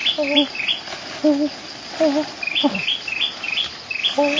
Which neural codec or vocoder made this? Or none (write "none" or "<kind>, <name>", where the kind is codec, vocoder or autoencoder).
none